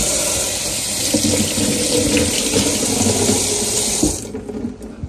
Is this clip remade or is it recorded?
recorded